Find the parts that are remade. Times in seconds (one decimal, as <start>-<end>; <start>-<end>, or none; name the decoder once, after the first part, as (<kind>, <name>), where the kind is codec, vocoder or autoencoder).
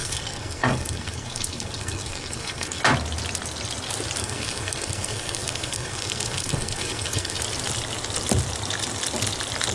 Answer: 0.0-2.8 (codec, SNAC); 4.2-7.4